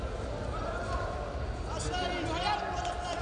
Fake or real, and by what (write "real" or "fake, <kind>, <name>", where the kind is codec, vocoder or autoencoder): real